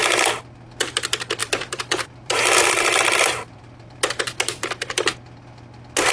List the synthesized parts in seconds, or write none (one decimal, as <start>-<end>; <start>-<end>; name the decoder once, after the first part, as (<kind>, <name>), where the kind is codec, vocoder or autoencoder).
1.4-5.1 (vocoder, BigVGAN v2)